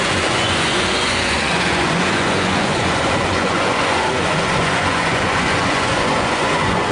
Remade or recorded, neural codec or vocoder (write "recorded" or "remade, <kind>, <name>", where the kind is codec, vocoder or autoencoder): remade, vocoder, Vocos